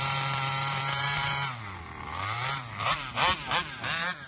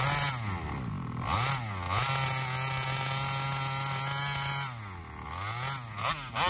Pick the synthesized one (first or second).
first